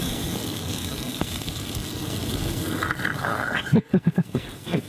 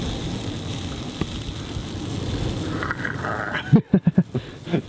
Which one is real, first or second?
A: second